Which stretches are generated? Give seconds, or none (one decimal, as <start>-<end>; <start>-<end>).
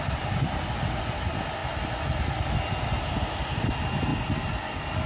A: none